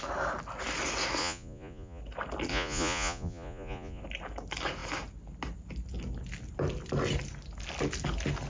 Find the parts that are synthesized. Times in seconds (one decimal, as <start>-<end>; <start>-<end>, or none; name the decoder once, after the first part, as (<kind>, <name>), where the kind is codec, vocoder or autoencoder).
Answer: 1.2-2.0 (vocoder, Vocos); 2.5-4.0